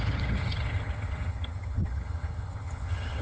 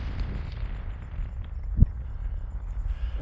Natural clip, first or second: second